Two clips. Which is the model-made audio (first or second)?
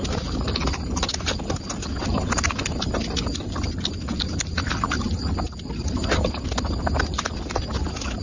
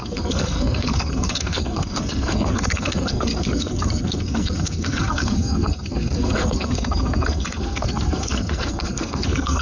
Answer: second